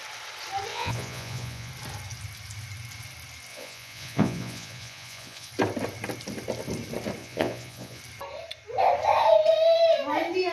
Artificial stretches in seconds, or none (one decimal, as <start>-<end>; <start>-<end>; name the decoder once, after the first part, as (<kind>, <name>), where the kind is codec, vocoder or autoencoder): 0.7-1.7 (vocoder, Vocos); 3.5-5.5; 7.2-8.0